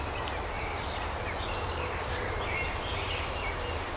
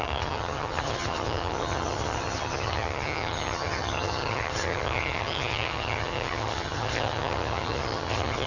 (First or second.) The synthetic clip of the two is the second